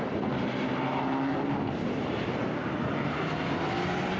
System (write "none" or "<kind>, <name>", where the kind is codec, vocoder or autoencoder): none